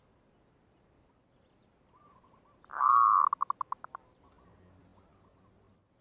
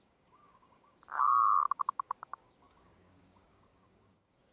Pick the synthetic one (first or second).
second